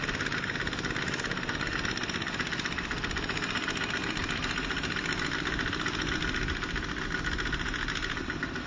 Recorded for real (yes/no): yes